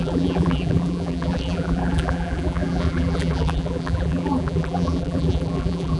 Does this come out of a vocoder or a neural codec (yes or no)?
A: yes